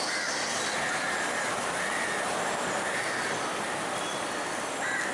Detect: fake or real real